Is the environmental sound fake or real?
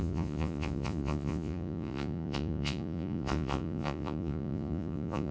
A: fake